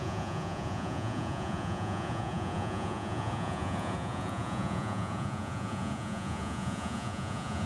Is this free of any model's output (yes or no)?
no